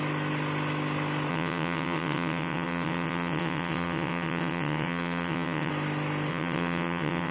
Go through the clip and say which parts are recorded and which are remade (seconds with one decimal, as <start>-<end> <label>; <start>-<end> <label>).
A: 0.0-1.3 recorded; 1.3-5.7 remade; 5.7-6.3 recorded; 6.3-7.3 remade